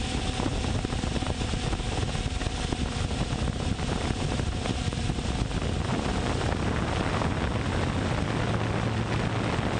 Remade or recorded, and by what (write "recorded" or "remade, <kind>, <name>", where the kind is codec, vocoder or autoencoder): recorded